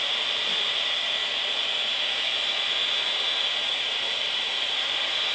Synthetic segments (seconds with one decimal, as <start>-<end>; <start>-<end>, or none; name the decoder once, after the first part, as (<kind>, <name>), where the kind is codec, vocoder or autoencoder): 0.0-1.2 (vocoder, BigVGAN v2); 3.7-5.3